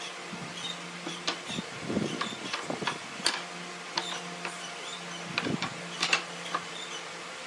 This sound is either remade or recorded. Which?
recorded